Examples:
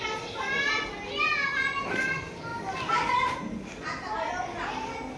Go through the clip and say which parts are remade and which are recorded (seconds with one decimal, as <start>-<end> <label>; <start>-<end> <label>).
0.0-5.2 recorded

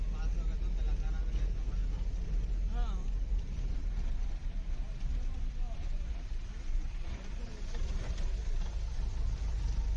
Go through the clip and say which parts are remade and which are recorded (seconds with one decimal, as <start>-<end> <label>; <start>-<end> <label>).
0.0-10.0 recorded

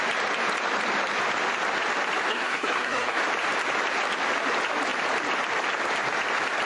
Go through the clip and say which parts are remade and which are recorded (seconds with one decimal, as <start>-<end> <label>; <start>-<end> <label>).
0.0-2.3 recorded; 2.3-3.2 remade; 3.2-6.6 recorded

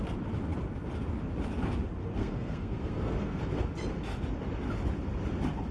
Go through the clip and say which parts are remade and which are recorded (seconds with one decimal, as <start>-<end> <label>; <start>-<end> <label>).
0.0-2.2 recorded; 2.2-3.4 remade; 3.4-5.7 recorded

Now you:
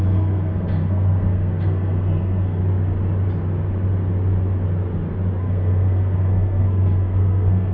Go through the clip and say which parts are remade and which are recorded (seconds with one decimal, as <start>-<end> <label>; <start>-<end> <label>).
0.0-2.6 remade; 2.6-5.4 recorded; 5.4-7.7 remade

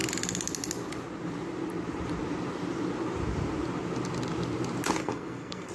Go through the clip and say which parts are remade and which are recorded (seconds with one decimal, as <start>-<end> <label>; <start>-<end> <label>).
0.0-5.0 recorded; 5.0-5.7 remade

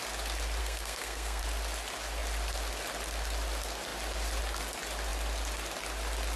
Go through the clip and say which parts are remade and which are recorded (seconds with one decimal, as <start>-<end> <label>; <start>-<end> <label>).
0.0-0.6 recorded; 0.6-1.4 remade; 1.4-6.4 recorded

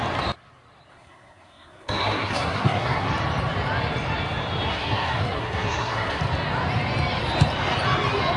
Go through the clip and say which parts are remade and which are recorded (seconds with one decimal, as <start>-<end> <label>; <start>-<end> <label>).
0.0-0.9 recorded; 0.9-3.1 remade; 3.1-4.7 recorded; 4.7-6.2 remade; 6.2-8.4 recorded